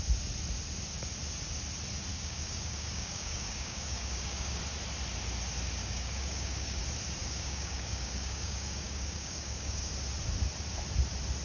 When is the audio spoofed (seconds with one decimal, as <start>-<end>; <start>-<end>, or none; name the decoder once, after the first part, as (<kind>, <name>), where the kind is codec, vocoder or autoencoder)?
2.1-4.6 (codec, DAC); 5.8-6.8; 7.2-9.9